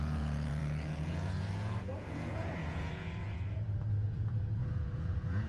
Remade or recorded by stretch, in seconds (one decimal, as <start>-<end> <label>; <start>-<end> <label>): 0.0-5.5 remade